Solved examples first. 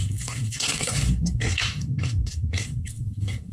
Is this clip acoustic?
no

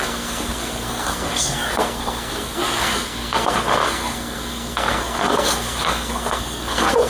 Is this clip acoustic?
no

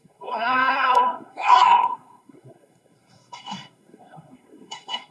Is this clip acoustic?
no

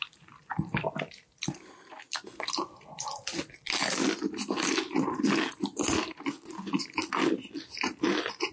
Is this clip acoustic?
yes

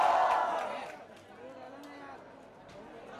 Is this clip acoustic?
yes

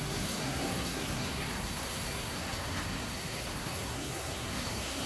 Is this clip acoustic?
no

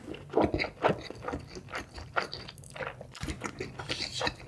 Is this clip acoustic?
yes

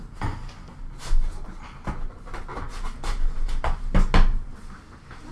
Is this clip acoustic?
yes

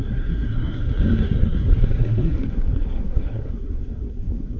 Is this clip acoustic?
no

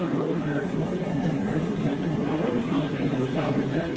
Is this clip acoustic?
no